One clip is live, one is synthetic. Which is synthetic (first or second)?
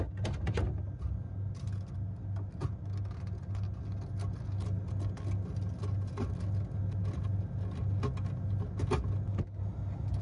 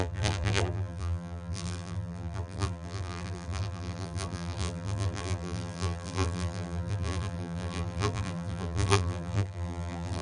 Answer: second